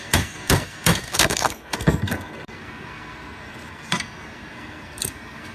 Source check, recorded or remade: remade